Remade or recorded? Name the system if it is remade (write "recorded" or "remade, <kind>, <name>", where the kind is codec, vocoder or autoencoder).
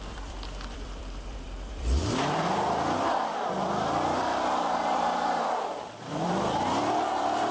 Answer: remade, vocoder, BigVGAN v2